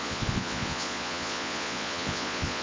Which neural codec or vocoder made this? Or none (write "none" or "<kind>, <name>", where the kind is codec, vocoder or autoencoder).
vocoder, Vocos